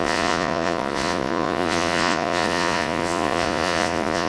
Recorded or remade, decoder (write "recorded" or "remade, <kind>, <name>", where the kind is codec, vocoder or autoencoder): remade, vocoder, Vocos